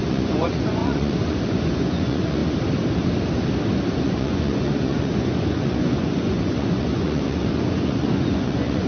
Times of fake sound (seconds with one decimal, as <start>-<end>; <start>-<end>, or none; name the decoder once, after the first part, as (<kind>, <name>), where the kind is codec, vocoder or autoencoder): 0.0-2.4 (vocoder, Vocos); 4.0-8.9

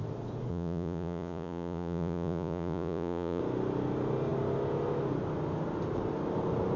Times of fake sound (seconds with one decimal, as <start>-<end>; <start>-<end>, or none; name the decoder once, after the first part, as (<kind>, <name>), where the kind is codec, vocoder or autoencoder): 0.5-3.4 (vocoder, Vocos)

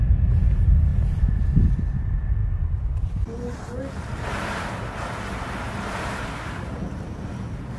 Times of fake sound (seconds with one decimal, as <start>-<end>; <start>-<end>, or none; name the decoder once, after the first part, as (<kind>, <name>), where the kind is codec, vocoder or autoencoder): none

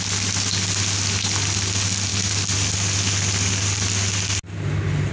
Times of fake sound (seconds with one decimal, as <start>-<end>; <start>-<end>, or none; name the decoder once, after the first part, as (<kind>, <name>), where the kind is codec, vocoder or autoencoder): none

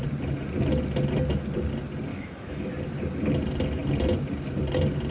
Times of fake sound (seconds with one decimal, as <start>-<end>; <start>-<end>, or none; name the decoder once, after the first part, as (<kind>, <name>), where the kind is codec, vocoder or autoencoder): 2.1-2.7 (autoencoder, DAC-VAE)

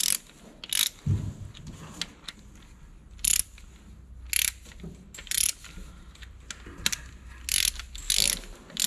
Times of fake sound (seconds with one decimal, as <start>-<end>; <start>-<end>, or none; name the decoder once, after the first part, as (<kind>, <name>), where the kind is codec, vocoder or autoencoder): none